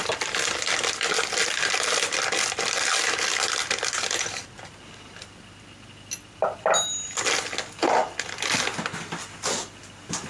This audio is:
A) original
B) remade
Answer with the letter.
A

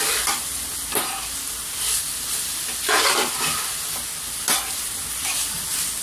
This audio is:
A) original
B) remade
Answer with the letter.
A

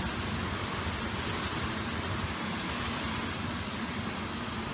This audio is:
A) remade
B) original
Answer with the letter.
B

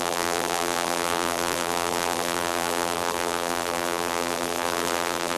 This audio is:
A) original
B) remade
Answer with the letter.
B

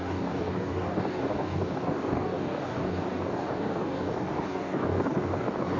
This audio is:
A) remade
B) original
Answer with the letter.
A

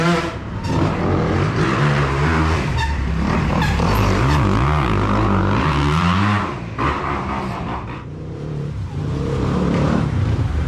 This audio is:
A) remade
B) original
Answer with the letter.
A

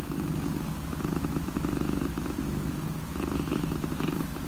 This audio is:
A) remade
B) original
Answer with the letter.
A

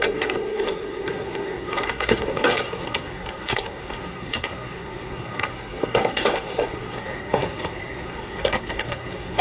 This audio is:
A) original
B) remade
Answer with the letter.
B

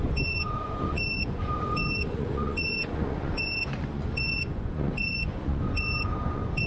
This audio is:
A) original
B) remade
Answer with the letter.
B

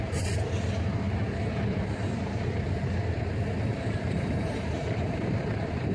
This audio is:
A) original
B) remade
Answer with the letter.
B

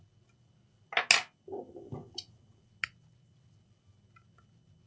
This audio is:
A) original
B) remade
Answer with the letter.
A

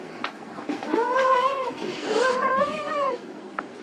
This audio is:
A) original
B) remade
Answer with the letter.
B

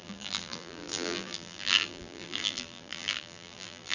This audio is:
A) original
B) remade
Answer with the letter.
B